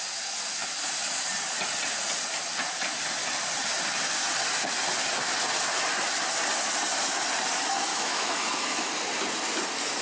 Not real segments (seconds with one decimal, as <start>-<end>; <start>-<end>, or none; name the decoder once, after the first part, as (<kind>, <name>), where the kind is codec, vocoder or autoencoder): 7.9-8.9 (autoencoder, DAC-VAE)